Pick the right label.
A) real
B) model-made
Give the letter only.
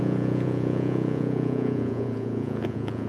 B